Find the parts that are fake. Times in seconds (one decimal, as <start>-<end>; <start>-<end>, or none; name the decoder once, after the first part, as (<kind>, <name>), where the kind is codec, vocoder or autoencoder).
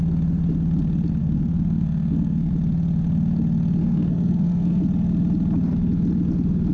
1.2-2.5 (codec, SNAC); 3.8-4.8